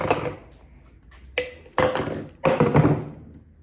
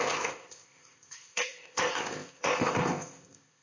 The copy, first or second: second